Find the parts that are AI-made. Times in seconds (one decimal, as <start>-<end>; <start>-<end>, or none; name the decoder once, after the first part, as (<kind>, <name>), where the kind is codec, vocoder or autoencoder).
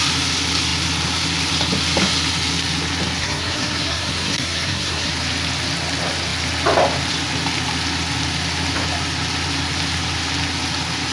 3.2-5.1 (codec, SNAC)